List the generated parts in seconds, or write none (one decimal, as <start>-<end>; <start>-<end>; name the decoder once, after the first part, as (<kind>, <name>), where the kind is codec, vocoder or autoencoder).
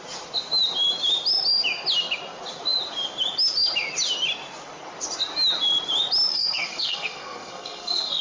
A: 6.3-8.2 (codec, SNAC)